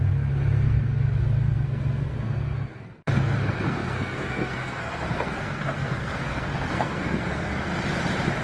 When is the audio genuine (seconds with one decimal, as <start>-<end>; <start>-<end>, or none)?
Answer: 7.7-8.4